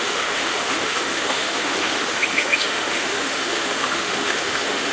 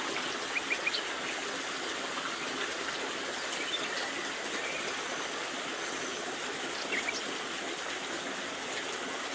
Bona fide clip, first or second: second